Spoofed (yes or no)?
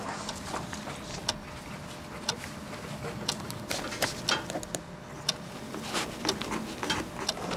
no